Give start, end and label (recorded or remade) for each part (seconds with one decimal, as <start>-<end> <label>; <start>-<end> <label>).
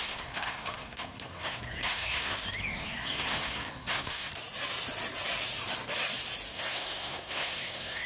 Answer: 0.0-2.3 remade; 2.3-2.7 recorded; 2.7-4.3 remade; 4.3-6.5 recorded; 6.5-8.1 remade